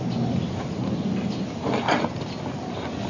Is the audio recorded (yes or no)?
yes